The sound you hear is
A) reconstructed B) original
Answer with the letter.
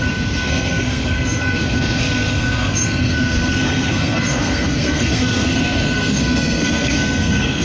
A